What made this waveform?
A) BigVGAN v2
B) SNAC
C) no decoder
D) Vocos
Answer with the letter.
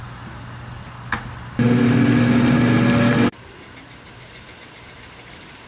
C